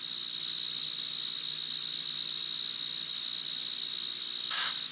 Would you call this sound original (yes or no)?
yes